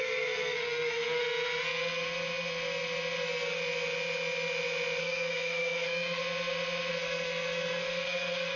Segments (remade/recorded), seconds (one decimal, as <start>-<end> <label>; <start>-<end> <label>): 0.0-1.2 remade; 1.2-5.0 recorded; 5.0-6.2 remade; 6.2-6.9 recorded; 6.9-8.6 remade